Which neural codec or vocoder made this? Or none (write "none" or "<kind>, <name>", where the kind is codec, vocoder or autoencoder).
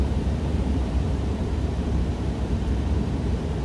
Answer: vocoder, BigVGAN v2